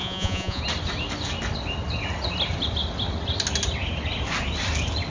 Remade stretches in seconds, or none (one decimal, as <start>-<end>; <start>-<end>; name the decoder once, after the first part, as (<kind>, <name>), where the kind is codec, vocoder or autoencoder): 0.0-0.6 (vocoder, Vocos)